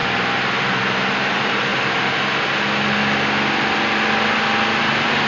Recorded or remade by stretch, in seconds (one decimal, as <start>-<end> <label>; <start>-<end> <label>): 0.0-0.6 recorded; 0.6-1.7 remade; 1.7-4.8 recorded; 4.8-5.3 remade